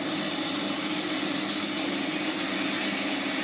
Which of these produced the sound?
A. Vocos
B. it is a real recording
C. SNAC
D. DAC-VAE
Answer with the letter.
B